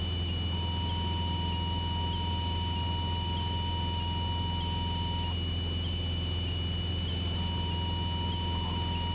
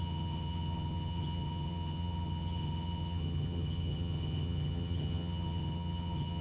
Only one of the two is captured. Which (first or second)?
first